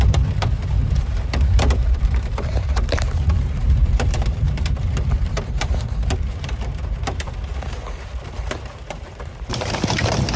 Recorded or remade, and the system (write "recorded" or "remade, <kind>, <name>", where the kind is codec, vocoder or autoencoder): remade, vocoder, BigVGAN v2